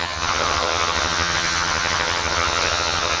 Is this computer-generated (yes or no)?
yes